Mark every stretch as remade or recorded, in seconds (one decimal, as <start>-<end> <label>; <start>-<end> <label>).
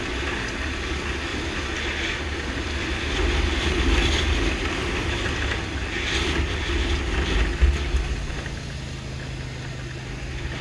0.0-1.3 recorded; 1.3-5.1 remade; 5.1-10.6 recorded